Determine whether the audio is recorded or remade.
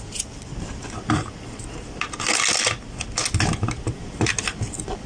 recorded